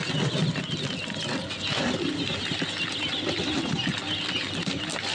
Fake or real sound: real